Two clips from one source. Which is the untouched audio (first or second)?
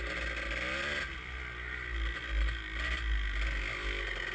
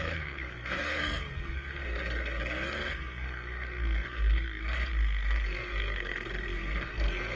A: first